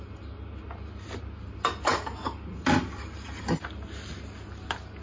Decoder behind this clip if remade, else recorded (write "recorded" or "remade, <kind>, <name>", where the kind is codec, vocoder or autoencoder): recorded